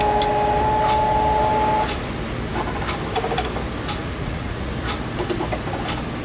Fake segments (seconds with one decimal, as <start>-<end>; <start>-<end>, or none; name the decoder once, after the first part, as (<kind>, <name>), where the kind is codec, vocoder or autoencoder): 4.0-4.7 (vocoder, Vocos)